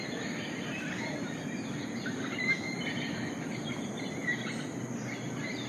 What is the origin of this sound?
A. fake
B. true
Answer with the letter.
B